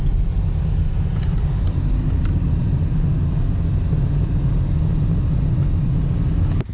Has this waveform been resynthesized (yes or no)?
no